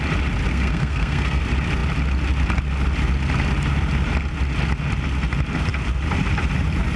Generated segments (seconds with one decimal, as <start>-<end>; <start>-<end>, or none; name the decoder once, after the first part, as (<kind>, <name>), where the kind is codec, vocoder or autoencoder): 0.5-1.4 (codec, SNAC)